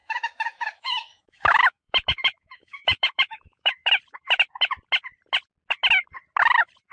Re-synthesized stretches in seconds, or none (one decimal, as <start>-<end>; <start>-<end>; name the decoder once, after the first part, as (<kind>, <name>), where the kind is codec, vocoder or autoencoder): 0.0-3.9 (autoencoder, DAC-VAE)